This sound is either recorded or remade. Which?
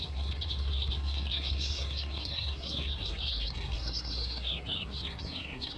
remade